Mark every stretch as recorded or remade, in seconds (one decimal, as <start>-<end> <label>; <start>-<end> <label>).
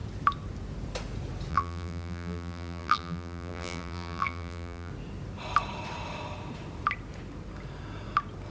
0.0-1.5 recorded; 1.5-4.9 remade; 4.9-8.5 recorded